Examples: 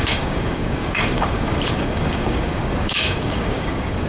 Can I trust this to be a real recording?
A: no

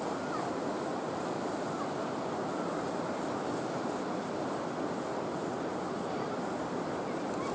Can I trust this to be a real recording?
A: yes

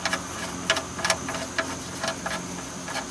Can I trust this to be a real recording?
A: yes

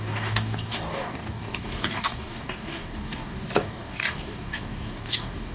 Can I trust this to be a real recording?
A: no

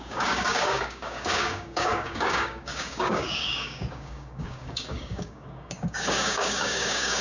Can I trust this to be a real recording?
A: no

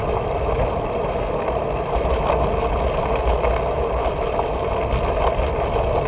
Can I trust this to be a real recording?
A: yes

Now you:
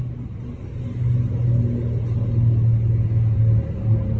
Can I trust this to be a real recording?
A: yes